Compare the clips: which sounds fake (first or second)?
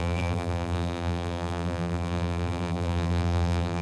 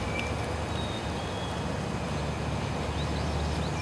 first